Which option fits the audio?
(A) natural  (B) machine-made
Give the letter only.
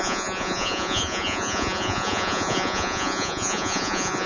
B